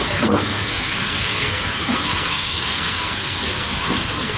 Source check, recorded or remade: remade